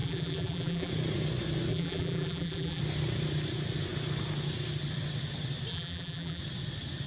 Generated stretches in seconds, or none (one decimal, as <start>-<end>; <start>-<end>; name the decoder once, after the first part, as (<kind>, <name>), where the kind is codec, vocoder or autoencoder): 0.0-0.9 (vocoder, BigVGAN v2); 1.7-2.8; 5.7-6.4